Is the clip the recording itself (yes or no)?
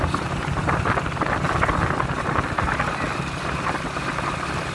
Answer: yes